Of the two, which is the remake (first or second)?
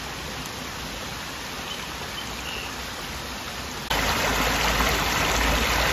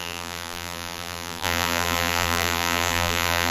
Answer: second